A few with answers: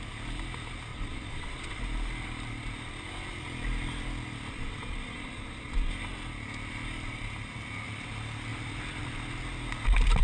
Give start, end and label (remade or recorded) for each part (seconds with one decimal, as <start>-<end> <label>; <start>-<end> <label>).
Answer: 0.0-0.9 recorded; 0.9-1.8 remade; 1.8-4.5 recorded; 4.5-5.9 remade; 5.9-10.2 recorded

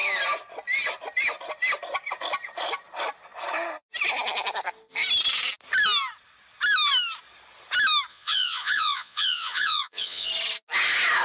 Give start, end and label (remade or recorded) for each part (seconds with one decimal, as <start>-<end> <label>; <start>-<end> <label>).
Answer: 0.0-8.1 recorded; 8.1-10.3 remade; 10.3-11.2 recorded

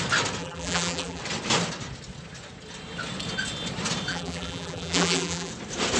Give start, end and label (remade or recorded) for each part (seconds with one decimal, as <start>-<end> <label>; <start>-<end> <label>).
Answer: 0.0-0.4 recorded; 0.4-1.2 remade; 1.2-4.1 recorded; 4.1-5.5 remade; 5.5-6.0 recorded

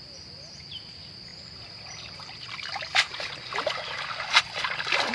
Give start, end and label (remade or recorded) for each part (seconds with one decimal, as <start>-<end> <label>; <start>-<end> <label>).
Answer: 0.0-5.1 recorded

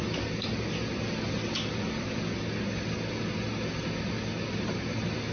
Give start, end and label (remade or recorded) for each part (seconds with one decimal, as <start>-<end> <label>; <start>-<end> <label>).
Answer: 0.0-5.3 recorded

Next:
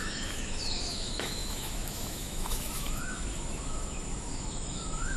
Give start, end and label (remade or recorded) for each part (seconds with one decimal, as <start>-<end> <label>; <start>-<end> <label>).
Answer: 0.0-5.2 remade